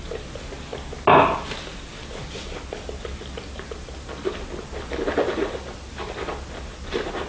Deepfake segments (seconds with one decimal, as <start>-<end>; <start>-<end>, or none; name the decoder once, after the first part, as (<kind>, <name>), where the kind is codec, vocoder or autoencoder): none